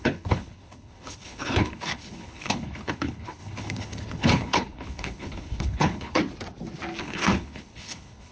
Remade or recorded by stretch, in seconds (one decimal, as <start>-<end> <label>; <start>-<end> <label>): 0.0-6.2 remade; 6.2-7.0 recorded; 7.0-8.3 remade